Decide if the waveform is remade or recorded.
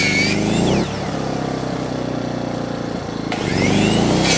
recorded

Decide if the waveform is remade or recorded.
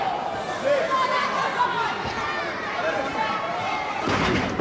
recorded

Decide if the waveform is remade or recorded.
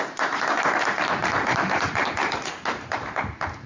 remade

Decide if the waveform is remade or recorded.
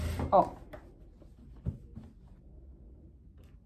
recorded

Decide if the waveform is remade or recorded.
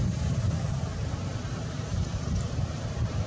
remade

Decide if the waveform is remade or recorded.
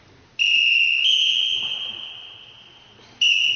recorded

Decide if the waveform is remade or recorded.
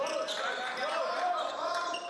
remade